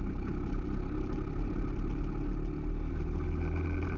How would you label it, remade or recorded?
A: recorded